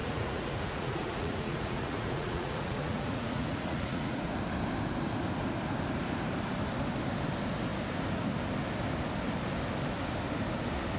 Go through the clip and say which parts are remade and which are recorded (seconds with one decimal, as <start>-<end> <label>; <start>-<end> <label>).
0.0-4.4 remade; 4.4-11.0 recorded